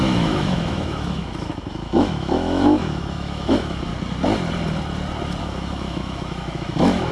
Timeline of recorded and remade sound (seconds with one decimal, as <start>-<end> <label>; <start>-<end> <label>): 0.0-3.9 remade; 3.9-5.4 recorded; 5.4-7.1 remade